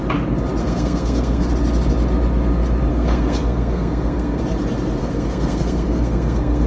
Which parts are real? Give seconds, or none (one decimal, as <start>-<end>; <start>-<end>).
0.0-0.6; 1.5-2.9; 4.4-5.0